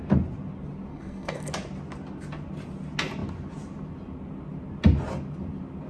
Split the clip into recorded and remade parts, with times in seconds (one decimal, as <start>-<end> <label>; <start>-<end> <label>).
0.0-0.9 recorded; 0.9-1.5 remade; 1.5-5.9 recorded